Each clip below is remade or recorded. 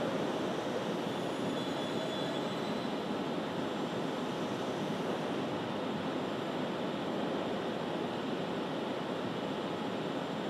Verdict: recorded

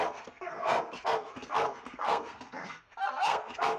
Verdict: remade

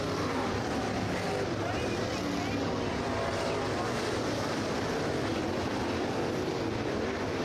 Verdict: recorded